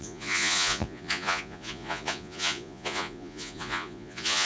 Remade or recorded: remade